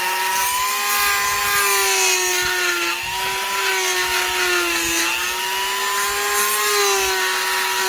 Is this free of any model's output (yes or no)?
yes